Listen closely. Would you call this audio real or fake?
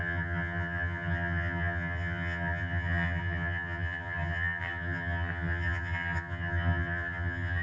fake